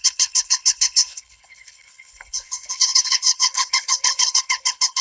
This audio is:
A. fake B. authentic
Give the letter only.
A